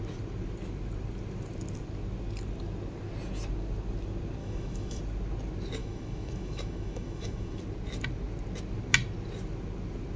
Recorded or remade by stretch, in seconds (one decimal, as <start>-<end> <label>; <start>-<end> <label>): 0.0-4.4 recorded; 4.4-5.0 remade; 5.0-5.8 recorded; 5.8-7.6 remade; 7.6-10.2 recorded

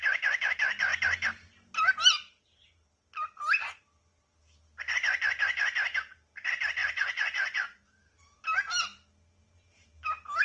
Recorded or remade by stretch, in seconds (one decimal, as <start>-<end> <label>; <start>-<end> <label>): 0.0-6.8 recorded; 6.8-7.8 remade; 7.8-10.4 recorded

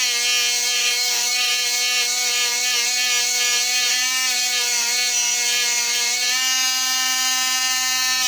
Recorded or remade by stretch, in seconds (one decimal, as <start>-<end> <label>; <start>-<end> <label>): 0.0-0.8 recorded; 0.8-1.5 remade; 1.5-8.3 recorded

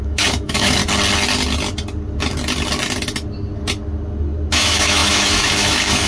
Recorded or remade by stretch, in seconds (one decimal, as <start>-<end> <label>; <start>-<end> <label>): 0.0-0.8 remade; 0.8-4.5 recorded; 4.5-6.1 remade

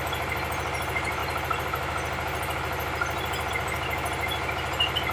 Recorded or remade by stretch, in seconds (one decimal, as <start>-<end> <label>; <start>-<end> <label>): 0.0-5.1 recorded